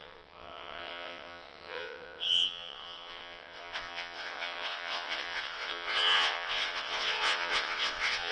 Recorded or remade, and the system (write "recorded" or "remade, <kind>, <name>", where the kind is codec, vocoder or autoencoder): remade, vocoder, WaveNeXt